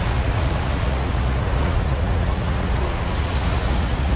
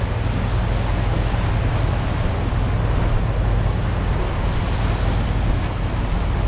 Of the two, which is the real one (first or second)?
second